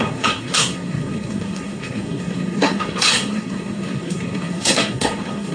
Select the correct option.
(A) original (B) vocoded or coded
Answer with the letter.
B